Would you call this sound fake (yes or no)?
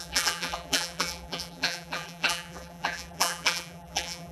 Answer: yes